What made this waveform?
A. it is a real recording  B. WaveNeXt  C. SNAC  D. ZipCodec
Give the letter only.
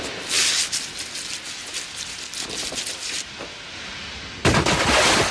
A